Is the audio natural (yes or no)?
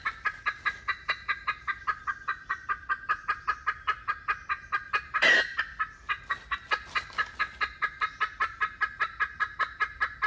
yes